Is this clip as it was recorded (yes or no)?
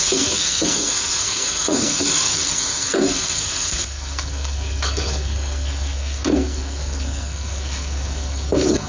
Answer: no